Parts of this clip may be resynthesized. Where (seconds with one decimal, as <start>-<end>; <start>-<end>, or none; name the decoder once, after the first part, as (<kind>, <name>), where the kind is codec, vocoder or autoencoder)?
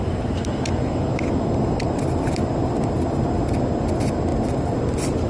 none